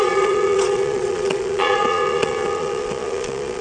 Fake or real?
fake